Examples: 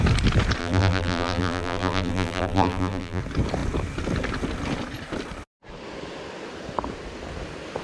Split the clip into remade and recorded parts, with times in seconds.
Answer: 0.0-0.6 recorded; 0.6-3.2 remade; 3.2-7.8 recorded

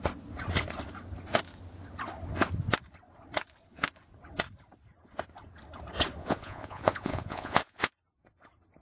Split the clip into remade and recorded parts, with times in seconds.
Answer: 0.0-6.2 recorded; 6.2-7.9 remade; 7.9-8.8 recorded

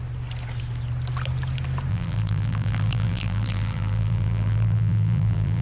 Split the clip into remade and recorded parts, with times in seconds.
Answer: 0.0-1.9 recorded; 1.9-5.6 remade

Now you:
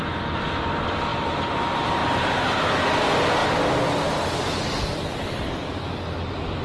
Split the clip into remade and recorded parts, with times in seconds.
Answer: 0.0-6.6 recorded

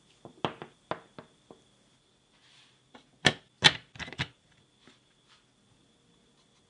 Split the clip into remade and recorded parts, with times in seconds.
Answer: 0.0-6.7 recorded

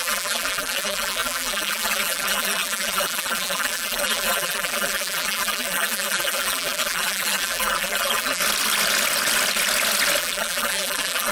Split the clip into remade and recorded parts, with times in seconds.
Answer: 0.0-8.4 remade; 8.4-10.2 recorded; 10.2-11.3 remade